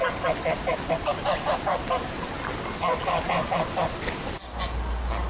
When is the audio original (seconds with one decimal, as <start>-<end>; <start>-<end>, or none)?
0.0-1.1; 4.3-5.3